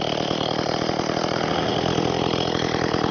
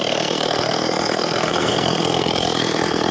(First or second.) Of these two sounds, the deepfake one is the second